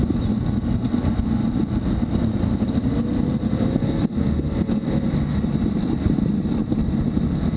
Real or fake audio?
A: real